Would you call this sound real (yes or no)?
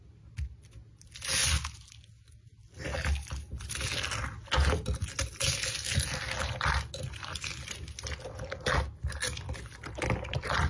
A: yes